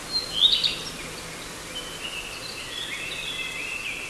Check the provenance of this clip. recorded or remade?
recorded